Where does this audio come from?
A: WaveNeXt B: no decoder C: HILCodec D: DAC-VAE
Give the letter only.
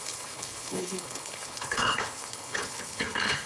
C